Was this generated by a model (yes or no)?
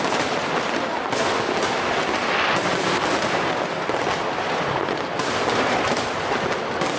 no